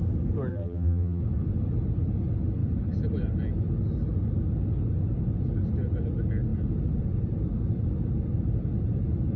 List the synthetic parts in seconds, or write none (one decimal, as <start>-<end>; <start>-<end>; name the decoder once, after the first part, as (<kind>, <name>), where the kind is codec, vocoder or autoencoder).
0.5-1.2 (vocoder, BigVGAN v2)